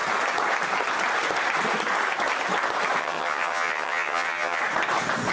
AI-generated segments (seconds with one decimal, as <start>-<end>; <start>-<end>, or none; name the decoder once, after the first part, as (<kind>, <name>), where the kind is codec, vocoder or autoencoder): 3.0-4.6 (vocoder, HiFi-GAN)